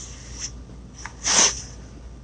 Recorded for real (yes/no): yes